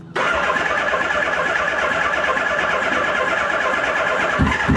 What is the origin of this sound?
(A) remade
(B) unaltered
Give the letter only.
B